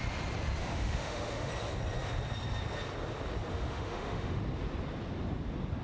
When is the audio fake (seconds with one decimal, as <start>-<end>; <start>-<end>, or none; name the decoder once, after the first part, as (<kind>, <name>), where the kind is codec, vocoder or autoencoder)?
0.6-1.5 (autoencoder, DAC-VAE); 3.5-4.4